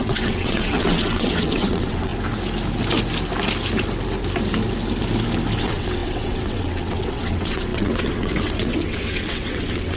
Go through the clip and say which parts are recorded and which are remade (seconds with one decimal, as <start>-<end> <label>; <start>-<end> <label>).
0.0-2.1 remade; 2.1-5.6 recorded; 5.6-10.0 remade